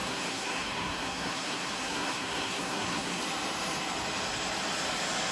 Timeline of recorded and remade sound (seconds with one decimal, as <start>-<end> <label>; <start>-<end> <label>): 0.0-3.2 remade; 3.2-5.3 recorded